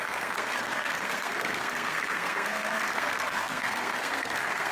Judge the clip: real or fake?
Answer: fake